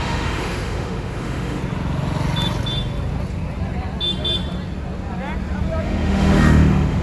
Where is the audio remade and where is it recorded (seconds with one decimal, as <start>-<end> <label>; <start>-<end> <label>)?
0.0-1.6 remade; 1.6-5.8 recorded; 5.8-7.0 remade